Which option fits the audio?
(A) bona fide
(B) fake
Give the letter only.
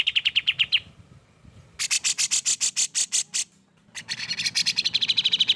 A